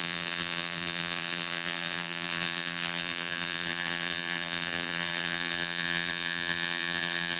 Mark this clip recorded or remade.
remade